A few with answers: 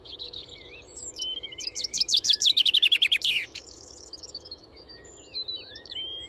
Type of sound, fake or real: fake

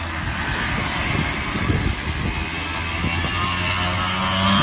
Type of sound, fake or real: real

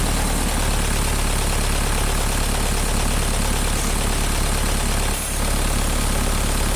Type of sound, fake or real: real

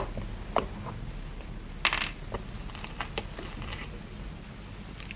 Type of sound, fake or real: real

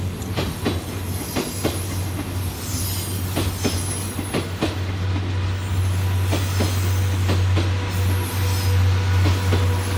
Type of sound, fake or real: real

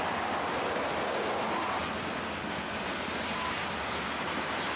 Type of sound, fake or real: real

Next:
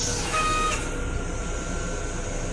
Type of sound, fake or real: real